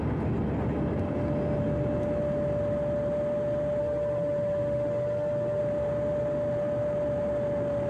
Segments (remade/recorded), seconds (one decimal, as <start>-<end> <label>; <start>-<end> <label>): 0.0-3.8 recorded; 3.8-5.6 remade; 5.6-7.9 recorded